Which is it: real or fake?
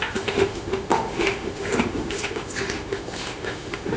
fake